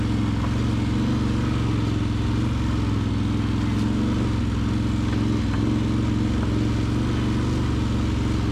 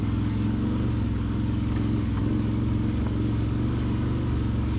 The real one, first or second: first